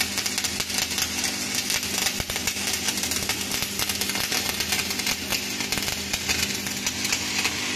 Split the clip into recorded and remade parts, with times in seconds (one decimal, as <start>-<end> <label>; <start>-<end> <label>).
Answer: 0.0-7.8 recorded